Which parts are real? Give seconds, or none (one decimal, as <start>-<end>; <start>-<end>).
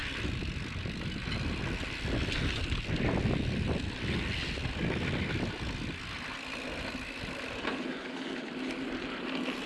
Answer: 0.0-9.7